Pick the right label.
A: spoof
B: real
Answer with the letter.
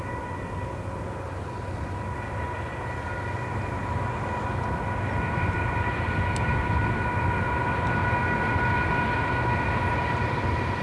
B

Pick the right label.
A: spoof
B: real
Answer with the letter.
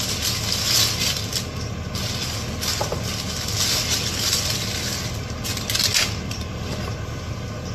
B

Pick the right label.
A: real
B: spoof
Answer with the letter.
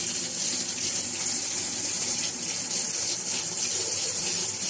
B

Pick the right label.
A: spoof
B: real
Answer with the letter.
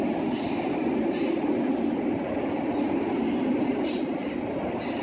B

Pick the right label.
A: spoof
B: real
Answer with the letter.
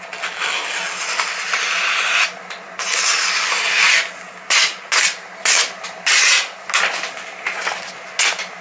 B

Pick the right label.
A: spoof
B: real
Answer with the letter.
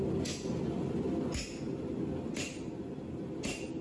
B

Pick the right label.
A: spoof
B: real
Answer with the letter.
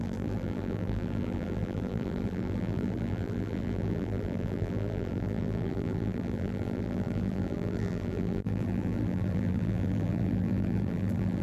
A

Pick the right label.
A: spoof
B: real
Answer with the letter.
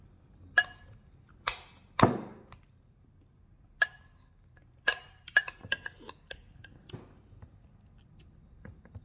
B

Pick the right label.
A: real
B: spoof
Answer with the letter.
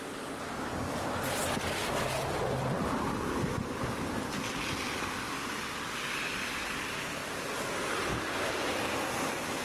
A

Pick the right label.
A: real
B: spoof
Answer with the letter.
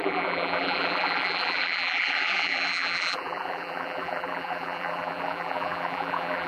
B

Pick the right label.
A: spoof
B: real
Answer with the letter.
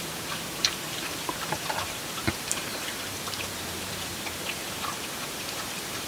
A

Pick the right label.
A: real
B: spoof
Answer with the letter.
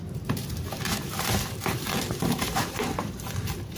B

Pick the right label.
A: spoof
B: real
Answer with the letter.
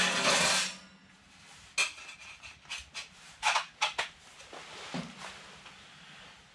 B